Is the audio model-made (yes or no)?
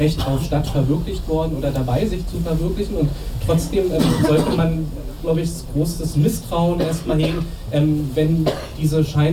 no